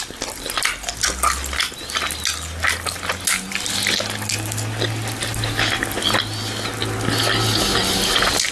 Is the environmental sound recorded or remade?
recorded